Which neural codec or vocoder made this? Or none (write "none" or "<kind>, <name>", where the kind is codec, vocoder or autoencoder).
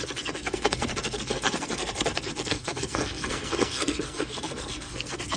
codec, SNAC